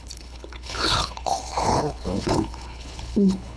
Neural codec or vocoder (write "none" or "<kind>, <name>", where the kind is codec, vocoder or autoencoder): codec, HILCodec